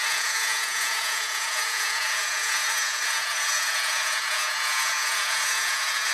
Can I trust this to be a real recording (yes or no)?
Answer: no